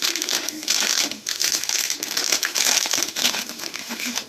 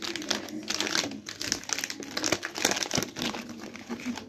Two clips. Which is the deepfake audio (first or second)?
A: first